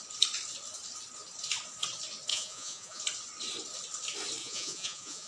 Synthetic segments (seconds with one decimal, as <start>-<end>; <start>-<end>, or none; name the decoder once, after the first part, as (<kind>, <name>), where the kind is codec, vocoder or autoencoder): 2.3-3.0 (vocoder, Vocos); 4.4-5.3